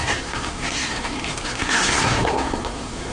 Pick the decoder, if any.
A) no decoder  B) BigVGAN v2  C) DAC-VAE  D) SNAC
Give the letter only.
D